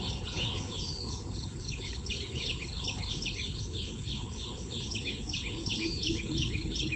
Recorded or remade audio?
remade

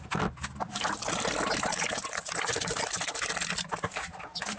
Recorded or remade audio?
recorded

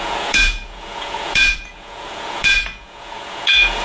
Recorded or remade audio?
remade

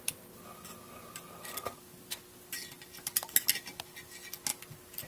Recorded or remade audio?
recorded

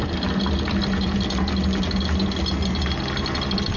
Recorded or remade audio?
recorded